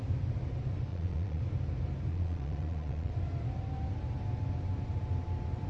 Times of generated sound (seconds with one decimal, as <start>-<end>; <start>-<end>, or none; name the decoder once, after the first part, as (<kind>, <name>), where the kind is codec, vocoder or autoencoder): 0.9-1.4 (vocoder, Vocos); 2.1-3.1